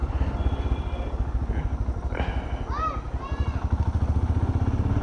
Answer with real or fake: real